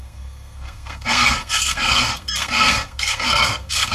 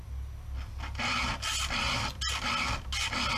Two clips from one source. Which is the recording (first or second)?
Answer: second